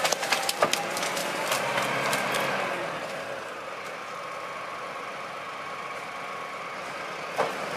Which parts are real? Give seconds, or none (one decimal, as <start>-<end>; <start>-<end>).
0.0-7.8